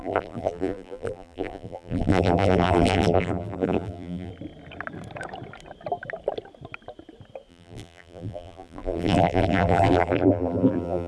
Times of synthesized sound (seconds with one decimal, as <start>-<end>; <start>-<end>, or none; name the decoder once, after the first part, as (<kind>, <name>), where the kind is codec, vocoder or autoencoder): 0.0-4.3 (vocoder, BigVGAN v2); 7.5-11.1